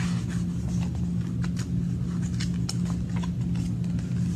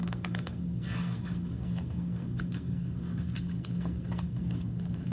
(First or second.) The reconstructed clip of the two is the second